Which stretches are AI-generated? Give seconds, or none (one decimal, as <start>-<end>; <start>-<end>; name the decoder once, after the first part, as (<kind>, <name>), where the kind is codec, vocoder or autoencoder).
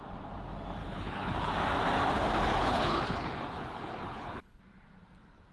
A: 0.8-1.5 (codec, HILCodec); 2.5-4.6